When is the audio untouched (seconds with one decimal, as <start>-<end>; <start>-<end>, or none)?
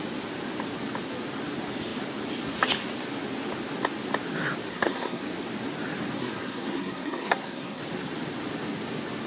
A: 0.0-4.7; 5.2-6.2; 7.8-9.3